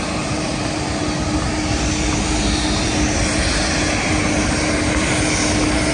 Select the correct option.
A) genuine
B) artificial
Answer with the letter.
A